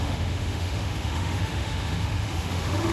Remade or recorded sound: remade